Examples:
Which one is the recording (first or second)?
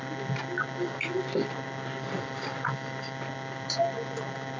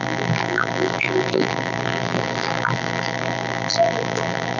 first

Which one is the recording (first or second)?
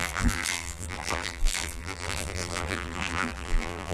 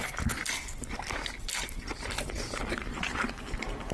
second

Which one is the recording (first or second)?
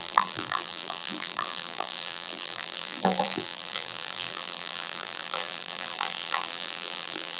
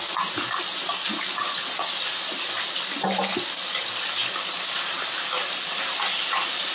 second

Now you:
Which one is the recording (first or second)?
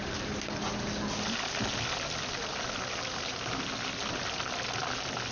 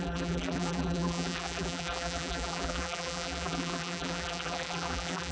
first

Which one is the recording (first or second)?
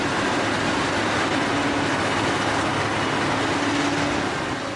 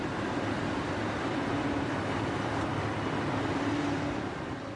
first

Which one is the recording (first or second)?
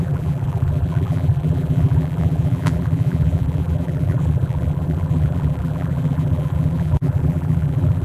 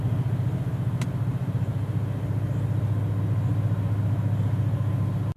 second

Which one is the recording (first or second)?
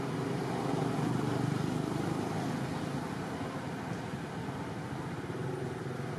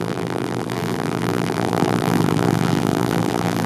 first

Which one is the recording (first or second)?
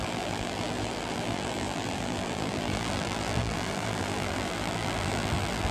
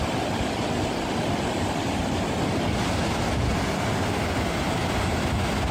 second